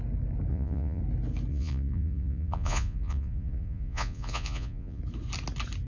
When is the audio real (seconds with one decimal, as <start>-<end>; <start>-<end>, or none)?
0.0-0.5; 1.0-1.5; 5.0-5.9